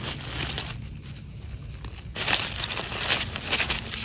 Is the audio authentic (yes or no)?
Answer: yes